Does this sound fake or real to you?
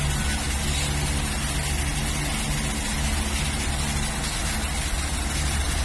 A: real